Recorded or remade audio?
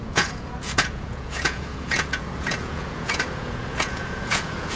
remade